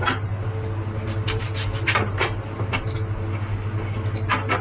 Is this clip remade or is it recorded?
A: recorded